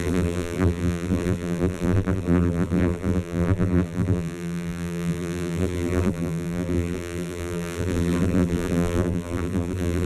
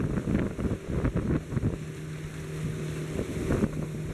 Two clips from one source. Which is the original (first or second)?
second